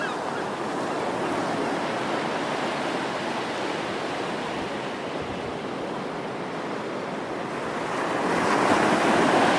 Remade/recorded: recorded